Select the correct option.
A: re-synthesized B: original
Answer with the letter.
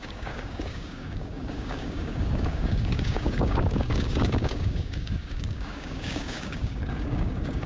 A